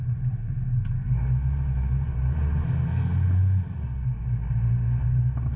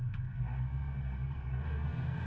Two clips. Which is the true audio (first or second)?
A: first